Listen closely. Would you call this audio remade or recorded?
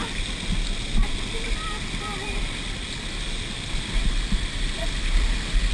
recorded